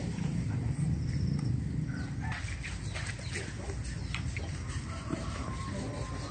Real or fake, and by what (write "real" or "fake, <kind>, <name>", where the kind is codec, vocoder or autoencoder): real